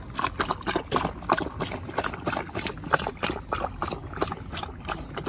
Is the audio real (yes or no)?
yes